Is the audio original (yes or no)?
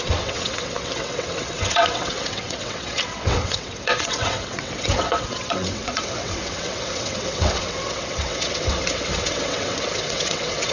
no